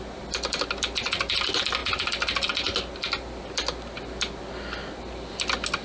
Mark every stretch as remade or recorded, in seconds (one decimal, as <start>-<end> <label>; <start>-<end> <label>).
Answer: 0.0-5.8 recorded